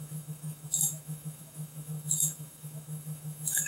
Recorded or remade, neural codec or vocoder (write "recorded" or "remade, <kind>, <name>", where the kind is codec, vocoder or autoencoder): remade, autoencoder, DAC-VAE